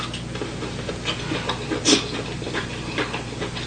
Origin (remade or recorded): recorded